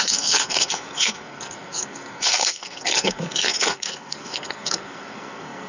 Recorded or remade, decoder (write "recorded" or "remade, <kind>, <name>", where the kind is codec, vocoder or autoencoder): remade, codec, SNAC